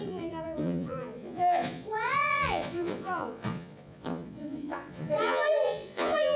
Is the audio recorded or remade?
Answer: remade